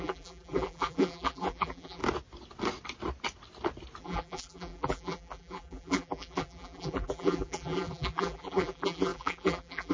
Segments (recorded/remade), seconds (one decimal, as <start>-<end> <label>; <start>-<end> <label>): 0.0-2.0 remade; 2.0-4.0 recorded; 4.0-9.9 remade